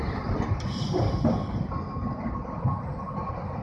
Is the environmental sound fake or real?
real